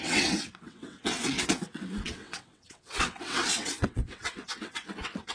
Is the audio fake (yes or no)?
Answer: yes